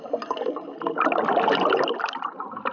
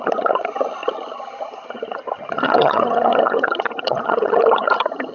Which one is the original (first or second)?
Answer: first